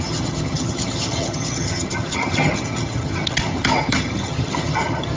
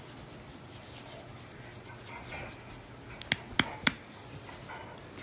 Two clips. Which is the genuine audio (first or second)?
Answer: second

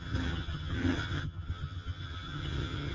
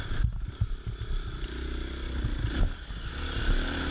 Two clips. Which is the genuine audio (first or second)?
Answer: second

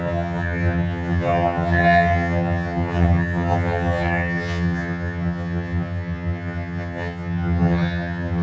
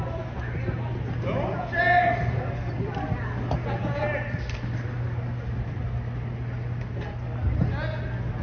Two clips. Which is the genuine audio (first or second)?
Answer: second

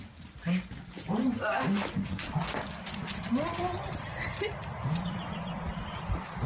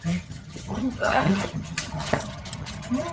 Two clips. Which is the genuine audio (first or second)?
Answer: first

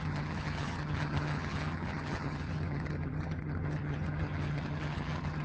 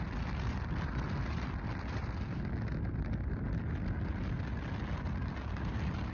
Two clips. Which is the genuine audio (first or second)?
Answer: second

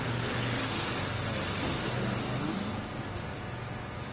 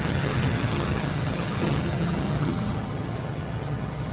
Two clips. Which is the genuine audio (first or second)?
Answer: first